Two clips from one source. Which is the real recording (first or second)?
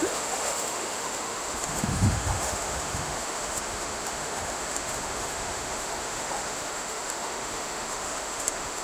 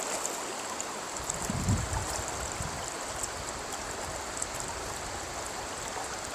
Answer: second